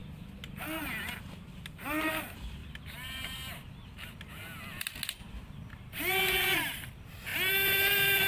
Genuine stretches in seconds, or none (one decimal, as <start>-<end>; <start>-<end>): 0.0-8.3